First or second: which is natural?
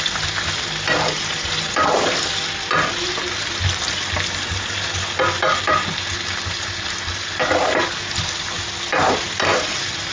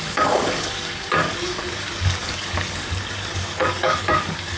first